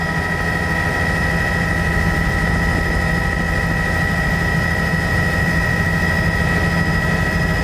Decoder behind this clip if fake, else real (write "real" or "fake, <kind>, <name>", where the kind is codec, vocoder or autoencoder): real